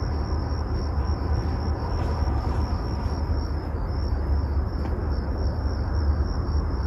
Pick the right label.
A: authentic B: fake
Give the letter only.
A